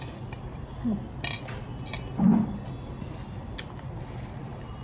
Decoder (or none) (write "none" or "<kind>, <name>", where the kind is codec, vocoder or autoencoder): none